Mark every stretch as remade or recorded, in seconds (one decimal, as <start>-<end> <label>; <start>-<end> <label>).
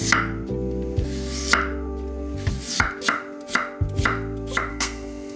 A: 0.0-4.7 recorded; 4.7-5.4 remade